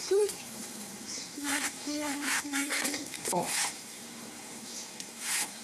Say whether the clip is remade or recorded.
remade